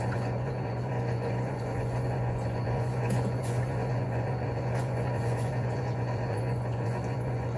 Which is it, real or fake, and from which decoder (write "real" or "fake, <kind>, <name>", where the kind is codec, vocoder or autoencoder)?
fake, vocoder, Vocos